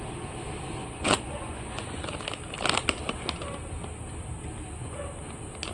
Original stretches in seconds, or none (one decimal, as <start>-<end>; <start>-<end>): 0.0-0.8; 2.0-5.7